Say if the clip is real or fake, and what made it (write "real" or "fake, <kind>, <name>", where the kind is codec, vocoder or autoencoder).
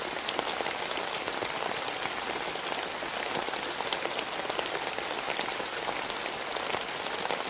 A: real